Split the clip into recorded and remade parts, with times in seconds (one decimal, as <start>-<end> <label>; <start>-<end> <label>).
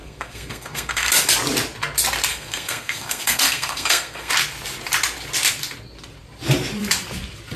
0.0-1.1 remade; 1.1-2.3 recorded; 2.3-4.3 remade; 4.3-7.6 recorded